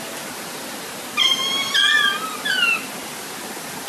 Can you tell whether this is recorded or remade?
recorded